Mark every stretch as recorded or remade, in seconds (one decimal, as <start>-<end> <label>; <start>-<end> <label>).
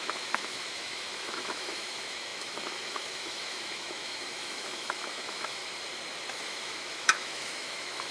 0.0-5.6 remade; 5.6-6.3 recorded; 6.3-8.1 remade